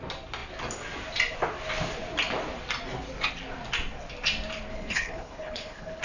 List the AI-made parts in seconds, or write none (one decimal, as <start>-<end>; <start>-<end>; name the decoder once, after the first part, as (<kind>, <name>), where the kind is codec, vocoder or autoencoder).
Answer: 4.7-6.0 (codec, HILCodec)